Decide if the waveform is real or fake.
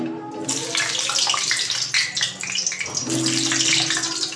real